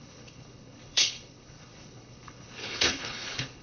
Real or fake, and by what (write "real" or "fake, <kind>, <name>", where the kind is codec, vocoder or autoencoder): fake, codec, HILCodec